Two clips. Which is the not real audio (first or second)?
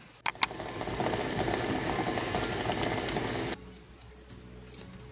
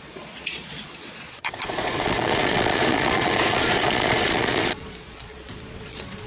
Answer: second